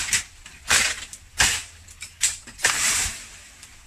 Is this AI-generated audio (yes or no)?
no